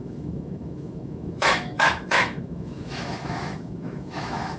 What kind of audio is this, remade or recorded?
remade